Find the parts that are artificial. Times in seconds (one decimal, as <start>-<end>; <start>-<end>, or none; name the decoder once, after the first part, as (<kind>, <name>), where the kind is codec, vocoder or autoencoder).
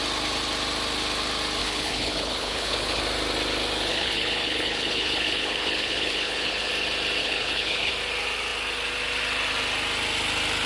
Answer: 1.6-3.0 (codec, HILCodec); 3.9-6.7; 7.2-7.9